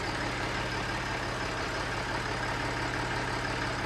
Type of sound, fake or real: real